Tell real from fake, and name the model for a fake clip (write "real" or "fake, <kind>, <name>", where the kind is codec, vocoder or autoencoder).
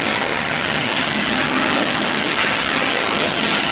fake, vocoder, HiFi-GAN